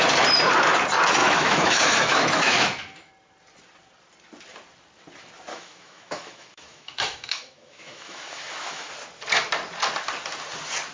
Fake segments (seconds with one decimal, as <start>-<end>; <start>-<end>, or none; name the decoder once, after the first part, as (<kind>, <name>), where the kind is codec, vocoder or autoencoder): 1.2-3.1 (autoencoder, DAC-VAE); 5.5-8.9